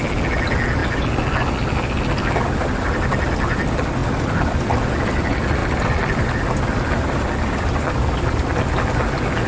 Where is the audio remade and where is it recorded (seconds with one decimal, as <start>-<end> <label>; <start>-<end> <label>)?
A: 0.0-9.5 recorded